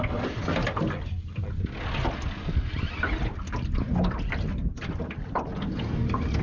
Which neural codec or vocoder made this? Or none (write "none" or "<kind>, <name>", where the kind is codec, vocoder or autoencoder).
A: none